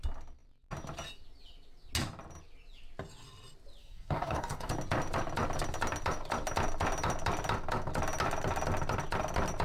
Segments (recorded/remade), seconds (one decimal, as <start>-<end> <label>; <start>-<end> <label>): 0.0-3.8 recorded; 3.8-4.7 remade; 4.7-9.6 recorded